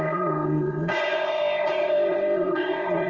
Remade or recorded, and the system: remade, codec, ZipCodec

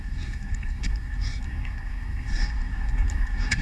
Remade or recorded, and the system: remade, codec, SNAC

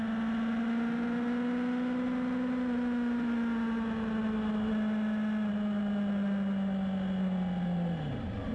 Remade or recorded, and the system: recorded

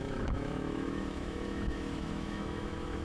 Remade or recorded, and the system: remade, autoencoder, DAC-VAE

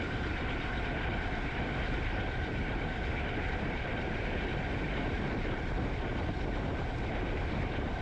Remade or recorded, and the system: recorded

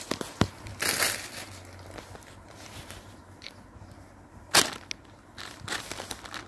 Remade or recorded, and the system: recorded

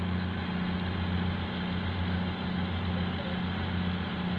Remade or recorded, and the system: recorded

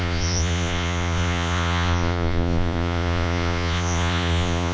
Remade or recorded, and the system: remade, vocoder, Vocos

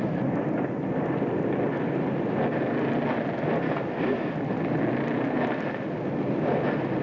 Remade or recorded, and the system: recorded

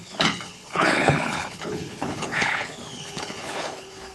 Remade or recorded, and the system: remade, codec, HILCodec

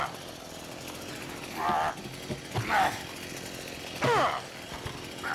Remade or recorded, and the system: recorded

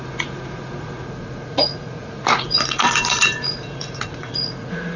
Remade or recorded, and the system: remade, vocoder, Vocos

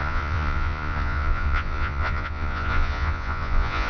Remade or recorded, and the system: remade, vocoder, Vocos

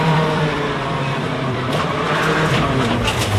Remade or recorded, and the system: remade, vocoder, BigVGAN v2